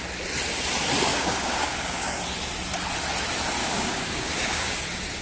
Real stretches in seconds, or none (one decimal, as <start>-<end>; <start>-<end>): 0.0-1.1; 2.2-3.6; 4.8-5.2